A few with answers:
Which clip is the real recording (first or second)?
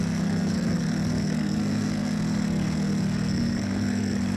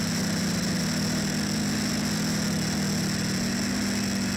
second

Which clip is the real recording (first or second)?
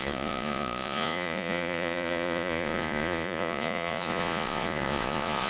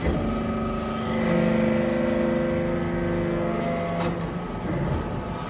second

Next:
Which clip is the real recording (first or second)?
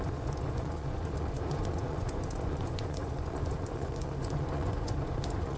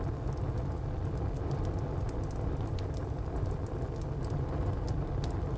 second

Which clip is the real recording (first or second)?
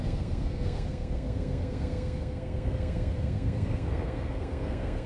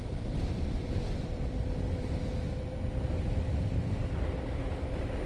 second